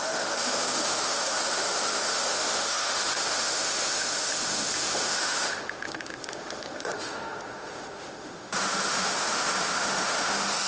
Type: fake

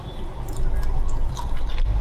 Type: real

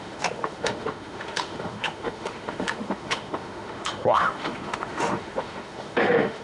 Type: fake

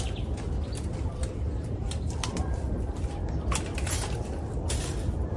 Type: real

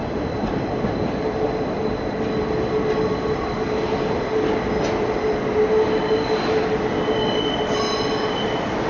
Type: real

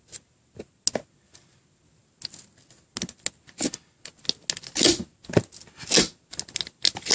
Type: real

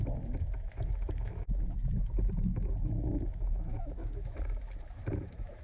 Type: fake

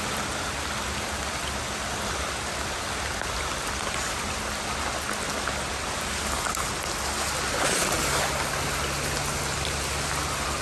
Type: real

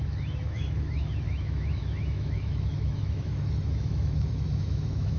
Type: fake